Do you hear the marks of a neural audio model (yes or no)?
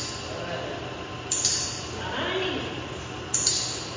no